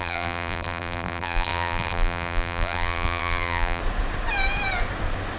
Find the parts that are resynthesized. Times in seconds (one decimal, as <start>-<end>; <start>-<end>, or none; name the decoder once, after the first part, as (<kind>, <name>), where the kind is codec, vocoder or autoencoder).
0.0-3.8 (vocoder, BigVGAN v2)